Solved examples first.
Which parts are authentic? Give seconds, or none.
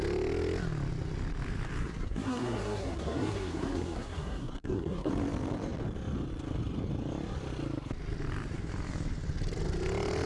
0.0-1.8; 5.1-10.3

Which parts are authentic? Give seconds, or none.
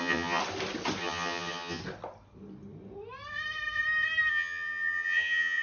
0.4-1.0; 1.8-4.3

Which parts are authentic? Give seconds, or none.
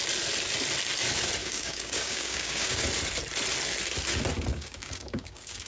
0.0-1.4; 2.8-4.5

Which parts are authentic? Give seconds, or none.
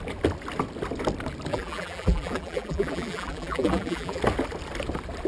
0.0-1.5; 4.2-5.3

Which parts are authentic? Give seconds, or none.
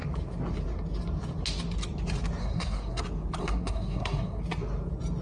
0.0-2.4; 3.0-3.4; 4.4-5.2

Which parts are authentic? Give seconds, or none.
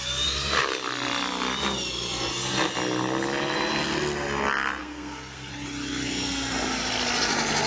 0.0-4.8; 5.5-7.7